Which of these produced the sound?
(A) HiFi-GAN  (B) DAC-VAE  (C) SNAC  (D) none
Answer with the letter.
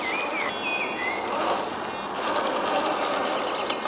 D